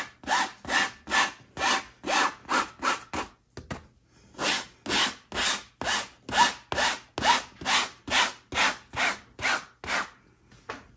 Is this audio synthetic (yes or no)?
no